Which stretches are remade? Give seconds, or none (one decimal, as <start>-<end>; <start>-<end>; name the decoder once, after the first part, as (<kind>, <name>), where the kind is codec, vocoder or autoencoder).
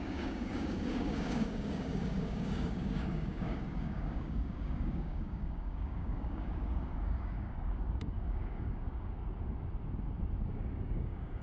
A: 0.0-9.2 (codec, DAC); 10.4-11.4